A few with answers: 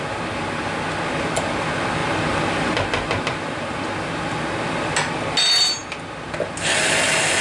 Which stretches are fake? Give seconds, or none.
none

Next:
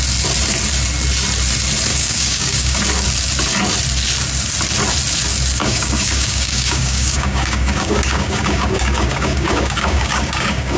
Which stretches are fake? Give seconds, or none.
1.9-2.8 (codec, DAC); 5.6-10.8

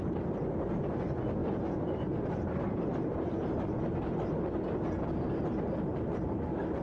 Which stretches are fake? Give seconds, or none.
1.4-3.8 (vocoder, BigVGAN v2); 5.9-6.8

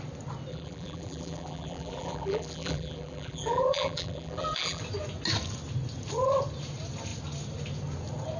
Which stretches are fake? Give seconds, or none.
0.5-4.8 (vocoder, BigVGAN v2)

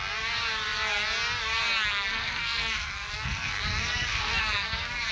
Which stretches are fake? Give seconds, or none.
2.1-5.1 (codec, SNAC)